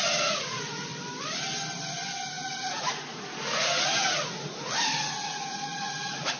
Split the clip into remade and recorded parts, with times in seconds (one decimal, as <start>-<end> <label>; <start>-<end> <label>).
0.0-0.9 remade; 0.9-2.3 recorded; 2.3-6.4 remade